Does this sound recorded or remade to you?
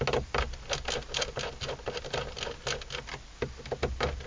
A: recorded